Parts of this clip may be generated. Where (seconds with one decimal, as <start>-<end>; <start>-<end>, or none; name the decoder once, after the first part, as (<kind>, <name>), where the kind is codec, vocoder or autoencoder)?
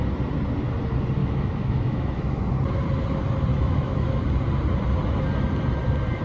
1.2-2.5 (autoencoder, DAC-VAE); 3.5-4.2